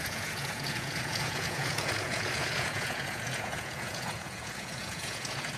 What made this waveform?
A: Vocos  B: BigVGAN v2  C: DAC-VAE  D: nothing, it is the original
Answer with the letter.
A